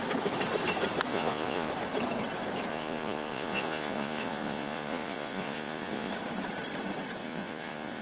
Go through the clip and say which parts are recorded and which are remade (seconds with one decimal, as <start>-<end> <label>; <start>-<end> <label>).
0.0-1.1 recorded; 1.1-1.7 remade; 1.7-2.7 recorded; 2.7-6.1 remade; 6.1-7.2 recorded; 7.2-8.0 remade